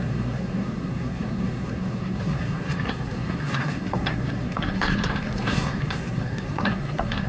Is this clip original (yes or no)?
no